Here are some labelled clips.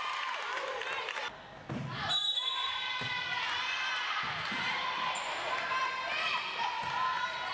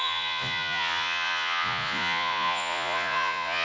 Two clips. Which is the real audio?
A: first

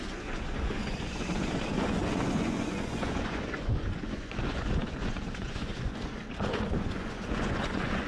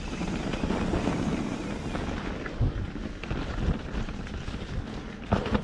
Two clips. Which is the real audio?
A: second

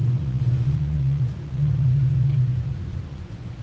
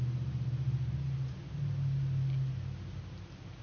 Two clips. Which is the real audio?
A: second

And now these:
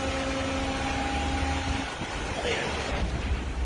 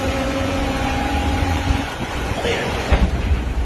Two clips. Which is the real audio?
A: first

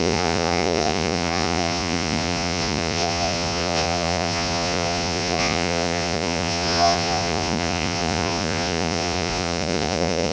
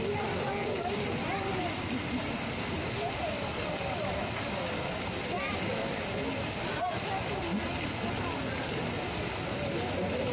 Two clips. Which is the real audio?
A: second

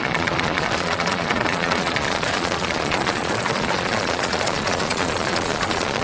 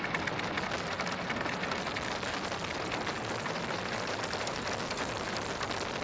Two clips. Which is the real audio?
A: second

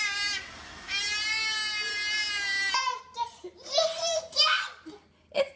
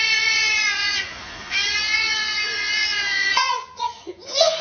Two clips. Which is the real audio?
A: first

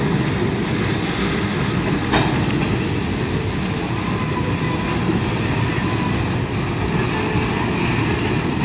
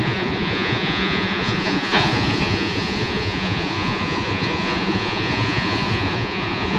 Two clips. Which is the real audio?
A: first